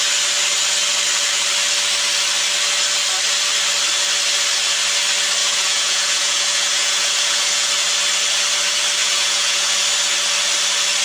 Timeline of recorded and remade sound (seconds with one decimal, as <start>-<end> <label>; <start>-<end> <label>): 0.0-5.4 recorded; 5.4-7.7 remade; 7.7-9.0 recorded; 9.0-9.8 remade; 9.8-11.0 recorded